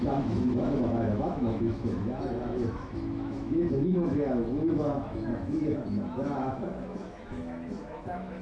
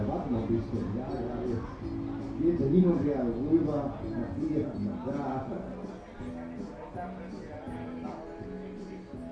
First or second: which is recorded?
second